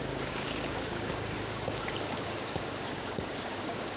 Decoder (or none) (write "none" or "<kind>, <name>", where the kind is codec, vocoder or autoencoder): codec, DAC